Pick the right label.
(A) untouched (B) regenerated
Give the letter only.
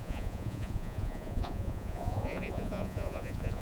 B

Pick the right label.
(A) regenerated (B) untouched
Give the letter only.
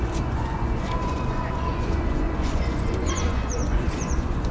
A